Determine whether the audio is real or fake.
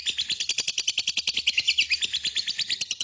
real